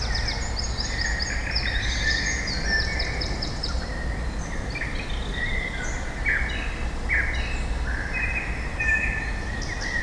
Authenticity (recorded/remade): recorded